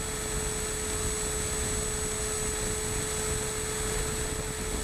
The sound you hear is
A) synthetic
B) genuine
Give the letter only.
B